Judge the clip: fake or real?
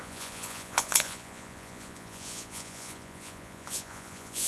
fake